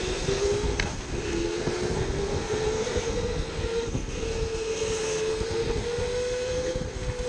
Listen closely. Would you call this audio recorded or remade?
remade